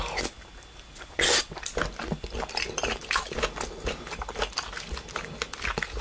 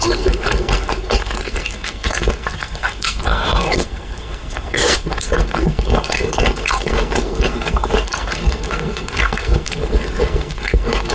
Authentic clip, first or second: first